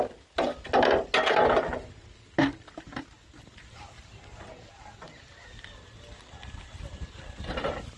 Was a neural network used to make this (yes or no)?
no